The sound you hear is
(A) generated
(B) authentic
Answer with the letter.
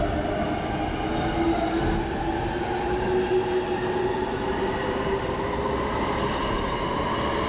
B